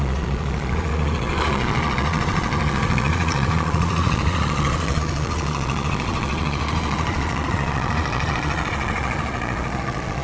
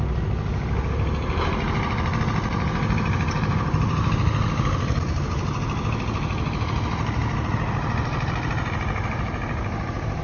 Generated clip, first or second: first